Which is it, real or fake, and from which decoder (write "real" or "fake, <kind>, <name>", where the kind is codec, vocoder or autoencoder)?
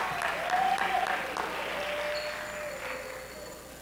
real